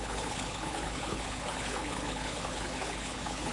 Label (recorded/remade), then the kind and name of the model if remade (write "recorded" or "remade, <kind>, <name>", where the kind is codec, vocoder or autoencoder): remade, codec, HILCodec